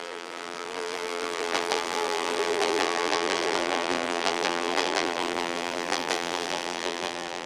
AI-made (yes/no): yes